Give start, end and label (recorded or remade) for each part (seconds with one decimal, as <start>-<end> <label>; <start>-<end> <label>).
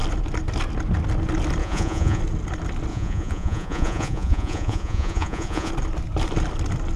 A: 0.0-1.6 recorded; 1.6-2.2 remade; 2.2-2.9 recorded; 2.9-5.7 remade; 5.7-7.0 recorded